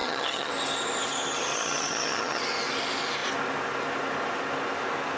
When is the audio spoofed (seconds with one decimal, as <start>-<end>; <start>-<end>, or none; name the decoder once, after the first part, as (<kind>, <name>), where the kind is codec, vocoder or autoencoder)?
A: 0.0-0.5 (vocoder, HiFi-GAN); 1.5-2.4